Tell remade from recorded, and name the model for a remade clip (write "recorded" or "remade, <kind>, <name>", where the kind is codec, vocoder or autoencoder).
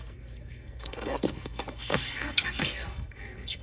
remade, codec, SNAC